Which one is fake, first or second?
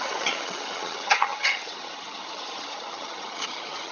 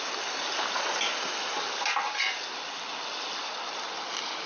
first